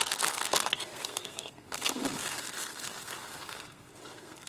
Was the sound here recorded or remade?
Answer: remade